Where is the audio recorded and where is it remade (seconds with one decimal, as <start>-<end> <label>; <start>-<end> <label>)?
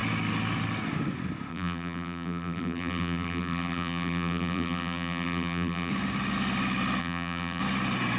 0.0-1.5 recorded; 1.5-5.9 remade; 5.9-7.0 recorded; 7.0-7.6 remade; 7.6-8.2 recorded